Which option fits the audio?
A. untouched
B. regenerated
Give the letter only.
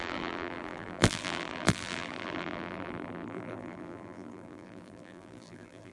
B